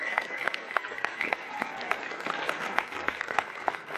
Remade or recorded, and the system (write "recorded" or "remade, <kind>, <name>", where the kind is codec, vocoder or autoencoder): remade, codec, SNAC